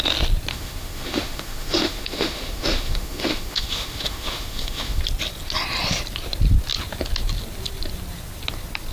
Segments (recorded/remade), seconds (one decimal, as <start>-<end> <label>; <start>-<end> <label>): 0.0-0.5 recorded; 0.5-5.0 remade; 5.0-8.9 recorded